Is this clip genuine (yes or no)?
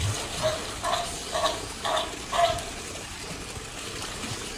yes